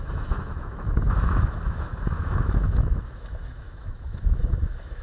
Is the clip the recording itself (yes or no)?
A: no